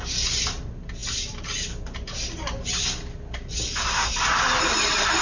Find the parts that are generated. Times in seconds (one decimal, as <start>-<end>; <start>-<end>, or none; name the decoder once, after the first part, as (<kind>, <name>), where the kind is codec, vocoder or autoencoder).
none